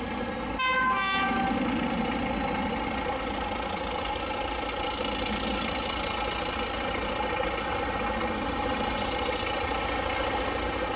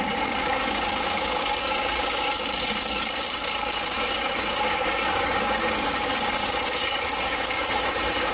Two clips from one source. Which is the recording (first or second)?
first